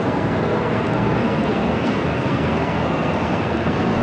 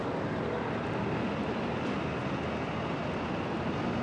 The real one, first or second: second